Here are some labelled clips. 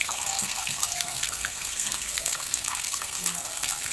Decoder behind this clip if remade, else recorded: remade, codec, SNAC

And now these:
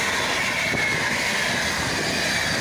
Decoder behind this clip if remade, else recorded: recorded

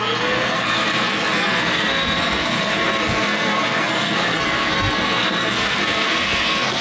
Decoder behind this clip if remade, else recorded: remade, codec, SNAC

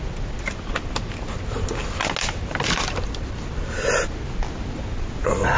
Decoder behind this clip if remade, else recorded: recorded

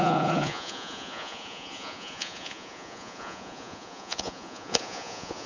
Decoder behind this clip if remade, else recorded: remade, vocoder, Vocos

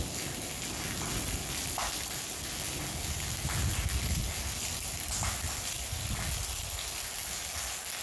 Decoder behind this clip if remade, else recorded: recorded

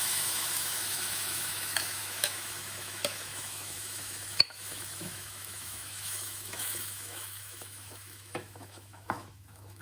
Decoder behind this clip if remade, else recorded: remade, autoencoder, DAC-VAE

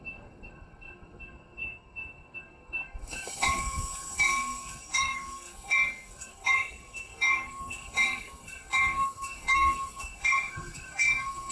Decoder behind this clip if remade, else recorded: remade, codec, SNAC